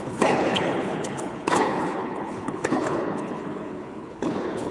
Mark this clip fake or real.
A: fake